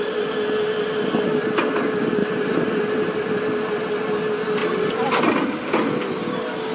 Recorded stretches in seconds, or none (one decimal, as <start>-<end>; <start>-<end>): 0.0-2.2; 3.3-6.7